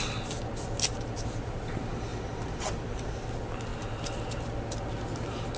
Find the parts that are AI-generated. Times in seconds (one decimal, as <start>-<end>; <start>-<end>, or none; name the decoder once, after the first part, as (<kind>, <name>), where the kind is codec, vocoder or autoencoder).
none

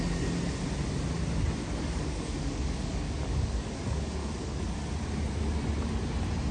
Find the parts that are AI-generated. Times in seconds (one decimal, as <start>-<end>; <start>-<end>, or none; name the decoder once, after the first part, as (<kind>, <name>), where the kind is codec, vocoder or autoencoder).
1.6-4.6 (codec, DAC)

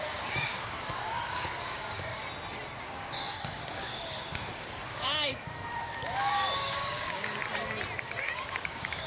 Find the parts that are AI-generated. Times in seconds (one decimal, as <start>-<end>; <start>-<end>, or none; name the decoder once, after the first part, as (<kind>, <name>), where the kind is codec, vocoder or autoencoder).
0.0-2.2 (codec, DAC); 2.8-7.4; 8.5-9.1

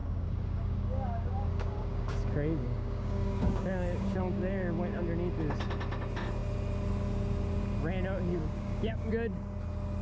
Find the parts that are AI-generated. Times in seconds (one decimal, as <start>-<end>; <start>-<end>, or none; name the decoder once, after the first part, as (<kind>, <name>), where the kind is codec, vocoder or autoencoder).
0.0-5.0 (codec, DAC); 8.3-9.1

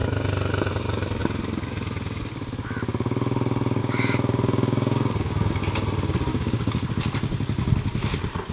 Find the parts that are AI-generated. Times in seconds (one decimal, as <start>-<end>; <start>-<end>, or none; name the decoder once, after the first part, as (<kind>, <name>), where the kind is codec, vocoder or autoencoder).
3.8-5.6 (codec, DAC); 6.3-6.9

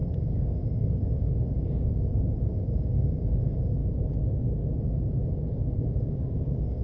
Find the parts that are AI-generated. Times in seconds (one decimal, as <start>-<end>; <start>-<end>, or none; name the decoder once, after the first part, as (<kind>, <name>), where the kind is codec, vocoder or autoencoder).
0.0-3.8 (codec, DAC); 4.4-5.2; 5.8-6.8

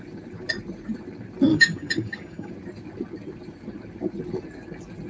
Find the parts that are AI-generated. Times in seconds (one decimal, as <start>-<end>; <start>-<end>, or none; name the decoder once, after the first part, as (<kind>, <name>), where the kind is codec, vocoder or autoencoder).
1.5-2.5 (codec, DAC)

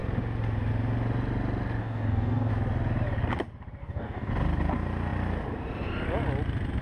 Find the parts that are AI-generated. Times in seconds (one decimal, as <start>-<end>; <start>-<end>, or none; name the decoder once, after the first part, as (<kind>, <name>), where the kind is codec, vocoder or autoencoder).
1.8-2.5 (codec, DAC); 3.8-4.3